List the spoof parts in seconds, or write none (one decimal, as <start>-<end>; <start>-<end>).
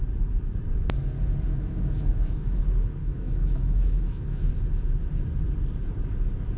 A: 1.5-2.6; 3.0-4.5